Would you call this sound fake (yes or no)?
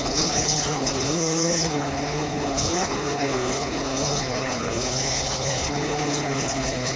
yes